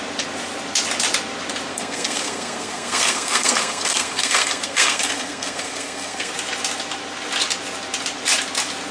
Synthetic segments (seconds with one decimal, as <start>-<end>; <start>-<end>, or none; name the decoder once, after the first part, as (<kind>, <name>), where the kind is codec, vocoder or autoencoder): 1.7-6.3 (codec, SNAC)